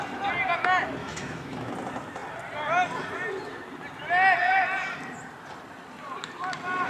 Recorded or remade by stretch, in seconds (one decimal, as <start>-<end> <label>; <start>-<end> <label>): 0.0-1.0 recorded; 1.0-1.7 remade; 1.7-6.9 recorded